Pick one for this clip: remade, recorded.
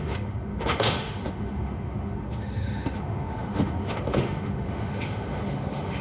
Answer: remade